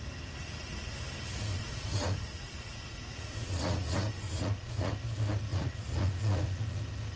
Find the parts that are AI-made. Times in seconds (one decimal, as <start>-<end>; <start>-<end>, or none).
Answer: 1.5-4.9; 5.5-6.8